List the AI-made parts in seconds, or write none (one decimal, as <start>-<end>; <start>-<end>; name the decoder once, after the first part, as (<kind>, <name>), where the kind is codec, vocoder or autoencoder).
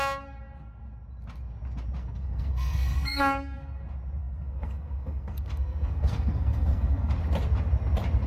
2.0-3.8 (codec, SNAC); 4.2-7.1